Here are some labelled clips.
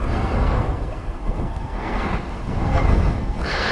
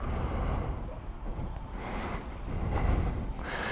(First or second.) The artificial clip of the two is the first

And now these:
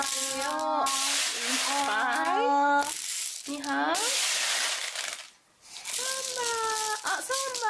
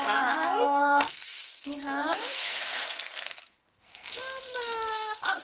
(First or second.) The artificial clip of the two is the second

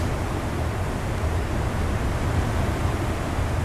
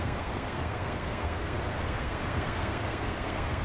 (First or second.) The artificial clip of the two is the second